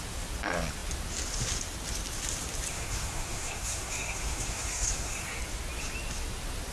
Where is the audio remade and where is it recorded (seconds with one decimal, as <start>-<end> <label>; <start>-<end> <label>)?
0.0-2.7 recorded; 2.7-5.4 remade; 5.4-6.7 recorded